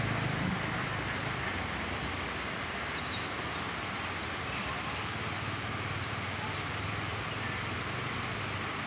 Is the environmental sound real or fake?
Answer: real